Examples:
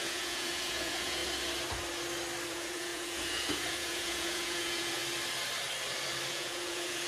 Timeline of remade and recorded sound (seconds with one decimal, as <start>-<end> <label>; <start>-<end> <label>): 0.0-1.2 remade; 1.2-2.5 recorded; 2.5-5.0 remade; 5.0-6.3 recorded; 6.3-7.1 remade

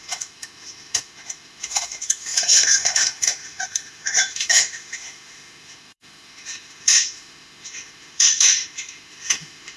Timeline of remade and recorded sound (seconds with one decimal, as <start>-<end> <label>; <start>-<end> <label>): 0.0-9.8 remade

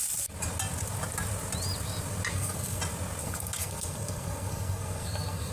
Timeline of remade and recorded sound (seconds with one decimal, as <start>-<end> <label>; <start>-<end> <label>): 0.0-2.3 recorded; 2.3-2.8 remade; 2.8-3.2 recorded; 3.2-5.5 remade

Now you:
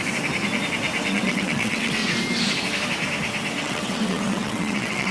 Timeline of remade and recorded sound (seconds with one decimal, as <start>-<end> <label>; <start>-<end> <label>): 0.0-1.1 recorded; 1.1-2.0 remade; 2.0-3.6 recorded; 3.6-5.1 remade

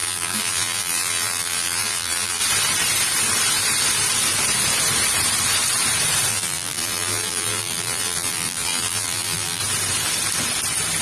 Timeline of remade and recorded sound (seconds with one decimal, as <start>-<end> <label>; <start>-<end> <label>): 0.0-2.4 remade; 2.4-6.3 recorded; 6.3-9.6 remade; 9.6-11.0 recorded

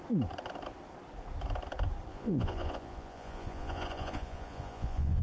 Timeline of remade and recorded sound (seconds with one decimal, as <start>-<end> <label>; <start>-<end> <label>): 0.0-2.1 recorded; 2.1-5.2 remade

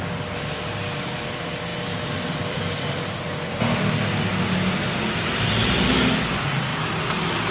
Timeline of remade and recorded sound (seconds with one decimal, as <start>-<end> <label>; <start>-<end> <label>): 0.0-7.5 recorded

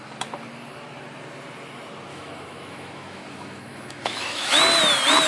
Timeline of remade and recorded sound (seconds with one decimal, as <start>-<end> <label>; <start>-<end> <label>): 0.0-2.1 recorded; 2.1-4.6 remade; 4.6-5.3 recorded